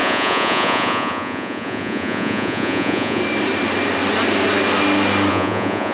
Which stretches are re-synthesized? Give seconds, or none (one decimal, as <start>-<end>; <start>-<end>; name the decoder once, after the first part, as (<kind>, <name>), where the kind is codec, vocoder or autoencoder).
0.0-3.2 (vocoder, Vocos); 5.3-5.9

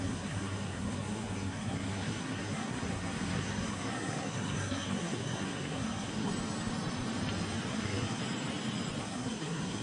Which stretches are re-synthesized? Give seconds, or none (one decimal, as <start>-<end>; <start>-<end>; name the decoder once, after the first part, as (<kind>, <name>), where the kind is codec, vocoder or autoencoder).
0.0-6.3 (codec, SNAC); 7.7-8.2; 9.0-9.8

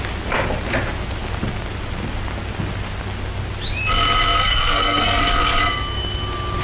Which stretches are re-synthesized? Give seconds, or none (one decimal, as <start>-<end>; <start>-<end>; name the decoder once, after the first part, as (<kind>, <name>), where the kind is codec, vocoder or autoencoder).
4.4-5.2 (codec, SNAC)

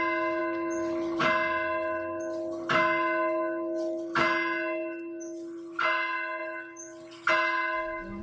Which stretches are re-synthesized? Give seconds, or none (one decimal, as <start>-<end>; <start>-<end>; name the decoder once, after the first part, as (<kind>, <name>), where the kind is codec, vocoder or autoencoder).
none

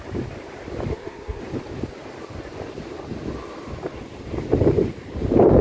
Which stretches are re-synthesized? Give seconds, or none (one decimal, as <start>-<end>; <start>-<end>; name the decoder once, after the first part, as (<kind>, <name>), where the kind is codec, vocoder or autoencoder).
0.9-1.4 (codec, SNAC)